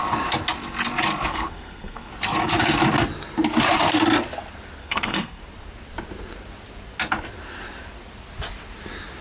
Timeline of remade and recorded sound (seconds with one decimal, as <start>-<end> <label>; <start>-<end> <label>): 0.0-1.3 recorded; 1.3-2.1 remade; 2.1-4.8 recorded; 4.8-5.4 remade; 5.4-9.2 recorded